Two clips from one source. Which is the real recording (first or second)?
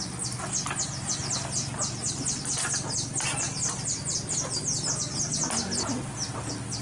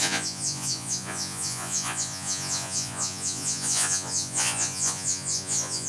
first